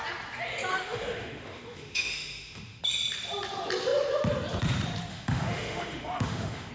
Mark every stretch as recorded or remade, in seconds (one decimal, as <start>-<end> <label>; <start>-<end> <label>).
0.0-0.7 recorded; 0.7-2.8 remade; 2.8-5.1 recorded; 5.1-6.7 remade